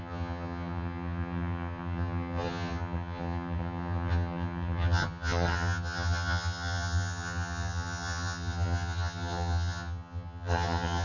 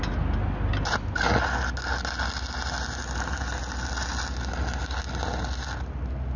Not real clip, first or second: first